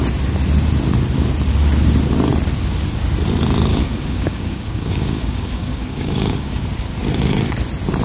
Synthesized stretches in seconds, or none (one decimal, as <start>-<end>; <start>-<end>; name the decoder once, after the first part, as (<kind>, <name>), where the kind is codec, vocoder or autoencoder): 3.7-6.6 (codec, DAC)